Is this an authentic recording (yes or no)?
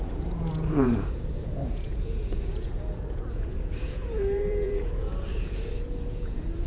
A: no